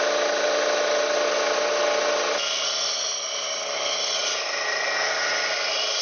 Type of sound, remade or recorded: recorded